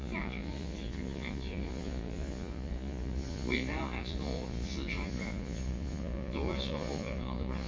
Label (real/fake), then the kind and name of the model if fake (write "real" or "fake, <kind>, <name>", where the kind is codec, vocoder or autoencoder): fake, vocoder, Vocos